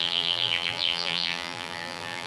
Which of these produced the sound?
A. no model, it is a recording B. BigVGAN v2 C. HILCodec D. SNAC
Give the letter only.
B